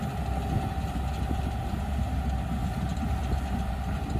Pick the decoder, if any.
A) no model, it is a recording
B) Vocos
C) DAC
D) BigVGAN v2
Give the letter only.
A